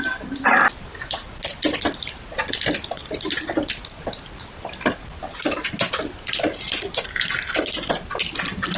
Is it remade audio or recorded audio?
recorded